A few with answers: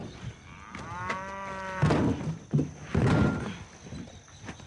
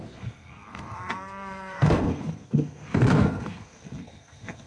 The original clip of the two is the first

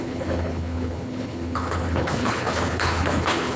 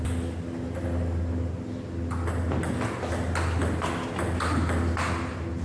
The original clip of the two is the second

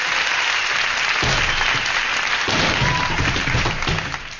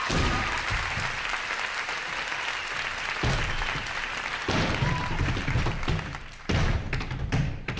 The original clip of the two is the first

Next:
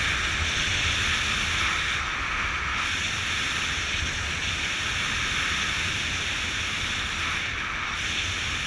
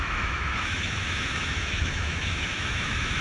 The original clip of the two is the first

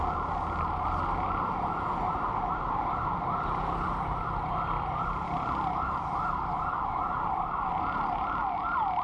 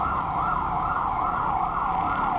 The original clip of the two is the second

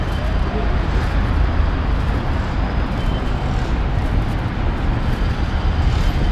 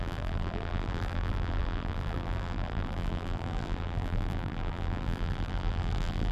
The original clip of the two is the first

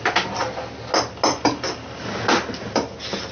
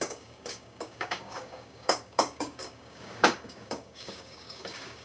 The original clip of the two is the first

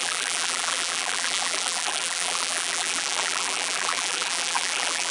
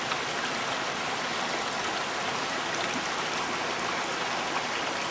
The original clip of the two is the second